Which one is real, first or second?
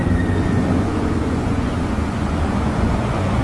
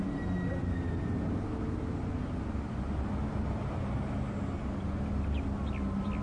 second